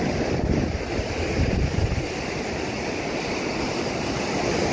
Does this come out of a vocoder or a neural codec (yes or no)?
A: no